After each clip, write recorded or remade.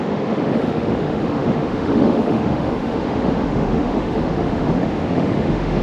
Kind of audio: remade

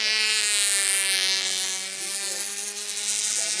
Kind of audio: recorded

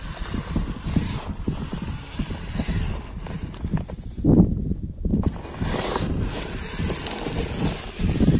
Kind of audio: recorded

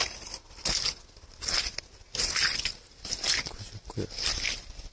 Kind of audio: recorded